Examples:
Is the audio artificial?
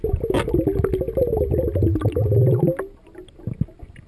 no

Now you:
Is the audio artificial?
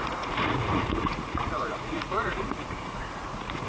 yes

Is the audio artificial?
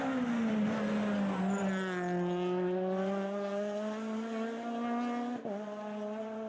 no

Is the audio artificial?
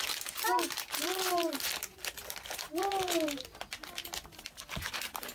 no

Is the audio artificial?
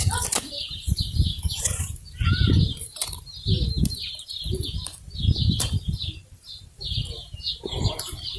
yes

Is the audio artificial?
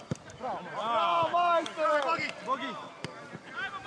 no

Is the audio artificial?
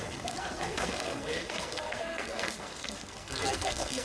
yes